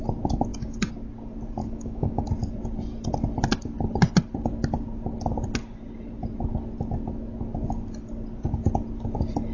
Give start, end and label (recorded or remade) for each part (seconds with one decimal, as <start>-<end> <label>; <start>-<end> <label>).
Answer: 0.0-1.6 recorded; 1.6-2.3 remade; 2.3-9.5 recorded